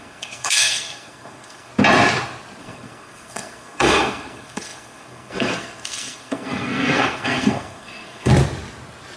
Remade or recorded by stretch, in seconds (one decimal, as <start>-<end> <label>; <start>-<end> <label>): 0.0-1.7 remade; 1.7-2.6 recorded; 2.6-8.3 remade; 8.3-9.2 recorded